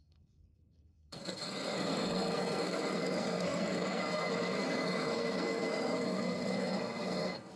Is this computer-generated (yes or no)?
yes